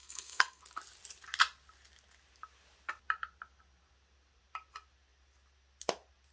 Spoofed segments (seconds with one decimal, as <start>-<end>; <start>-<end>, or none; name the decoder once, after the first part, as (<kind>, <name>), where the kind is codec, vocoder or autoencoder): 0.0-0.6 (codec, SNAC)